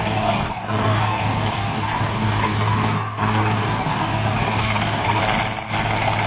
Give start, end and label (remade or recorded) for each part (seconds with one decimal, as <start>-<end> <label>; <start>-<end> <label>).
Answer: 0.0-5.2 remade; 5.2-6.3 recorded